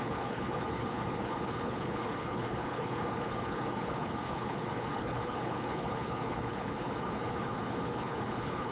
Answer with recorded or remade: remade